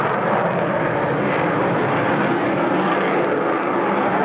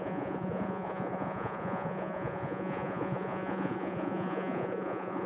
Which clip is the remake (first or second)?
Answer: second